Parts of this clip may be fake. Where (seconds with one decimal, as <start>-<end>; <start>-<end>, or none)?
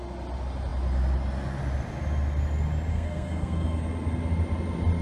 2.9-3.8